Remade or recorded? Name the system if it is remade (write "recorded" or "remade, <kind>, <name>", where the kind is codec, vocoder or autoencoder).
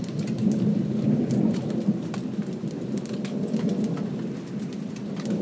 recorded